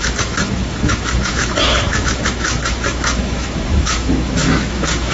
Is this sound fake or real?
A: fake